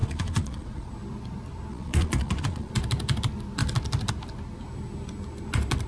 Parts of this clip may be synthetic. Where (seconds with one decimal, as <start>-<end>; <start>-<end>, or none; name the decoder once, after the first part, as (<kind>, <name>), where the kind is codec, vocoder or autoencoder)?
0.0-0.9 (vocoder, Vocos); 1.7-2.7